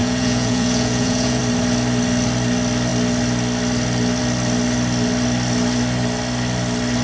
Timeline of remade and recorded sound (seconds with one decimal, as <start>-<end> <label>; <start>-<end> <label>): 0.0-1.4 remade; 1.4-7.0 recorded